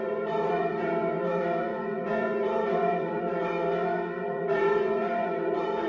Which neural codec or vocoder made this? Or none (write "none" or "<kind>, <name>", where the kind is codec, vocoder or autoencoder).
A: vocoder, Vocos